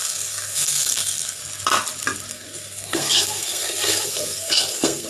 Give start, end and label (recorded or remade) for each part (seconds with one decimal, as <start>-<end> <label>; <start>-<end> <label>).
0.0-1.4 remade; 1.4-2.3 recorded; 2.3-5.1 remade

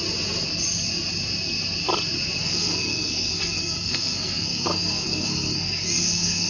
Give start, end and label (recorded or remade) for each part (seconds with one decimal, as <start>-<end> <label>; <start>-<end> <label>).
0.0-2.4 recorded; 2.4-6.5 remade